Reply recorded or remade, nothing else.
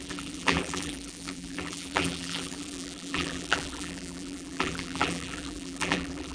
remade